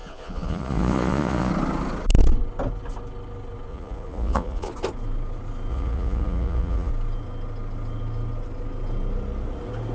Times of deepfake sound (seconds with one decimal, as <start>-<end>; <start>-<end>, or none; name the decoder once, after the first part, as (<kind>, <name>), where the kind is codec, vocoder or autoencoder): 0.0-1.5 (vocoder, Vocos); 3.7-4.7; 5.7-6.9